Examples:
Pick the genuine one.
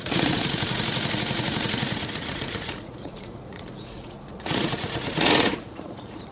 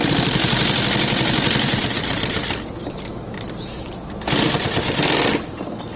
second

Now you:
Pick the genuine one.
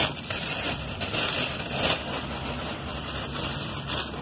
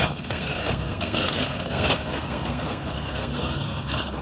first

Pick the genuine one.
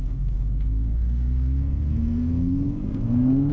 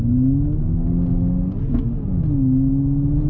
second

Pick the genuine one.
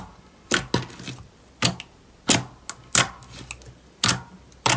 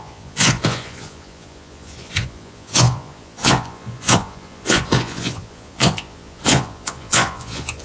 first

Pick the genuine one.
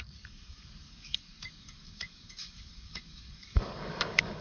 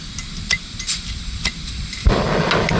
second